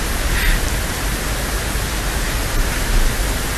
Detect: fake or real real